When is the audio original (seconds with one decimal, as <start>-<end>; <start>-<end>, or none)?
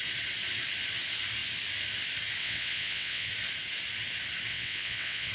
0.0-2.4; 3.3-4.5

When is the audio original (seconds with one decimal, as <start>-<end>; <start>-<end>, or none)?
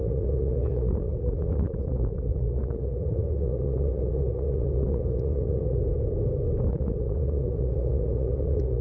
5.8-6.7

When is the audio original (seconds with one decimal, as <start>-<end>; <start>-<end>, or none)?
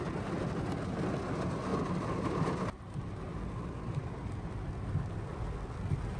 0.0-6.2